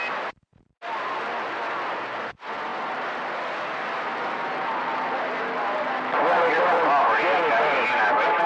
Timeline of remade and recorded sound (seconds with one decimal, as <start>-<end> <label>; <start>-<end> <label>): 0.0-8.5 recorded